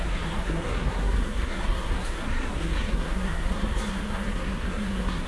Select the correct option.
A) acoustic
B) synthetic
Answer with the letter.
B